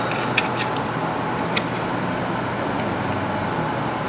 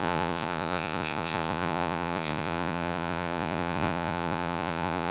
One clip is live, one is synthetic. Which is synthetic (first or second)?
second